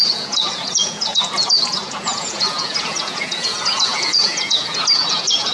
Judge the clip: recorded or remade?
remade